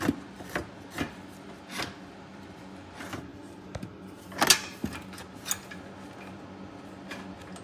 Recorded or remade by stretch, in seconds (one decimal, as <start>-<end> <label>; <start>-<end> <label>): 0.0-7.6 recorded